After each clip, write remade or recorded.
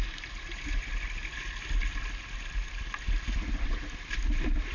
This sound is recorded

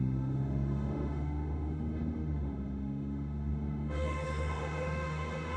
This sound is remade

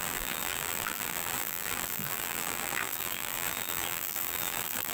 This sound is remade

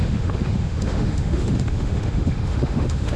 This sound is remade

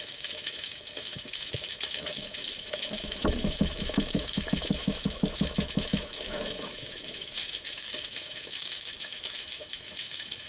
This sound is remade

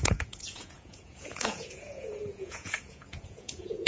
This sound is remade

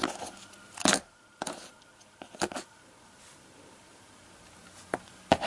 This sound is recorded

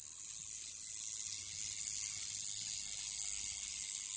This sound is recorded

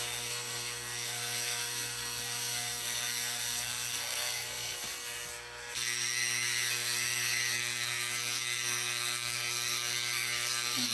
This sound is remade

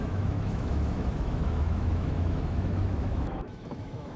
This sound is remade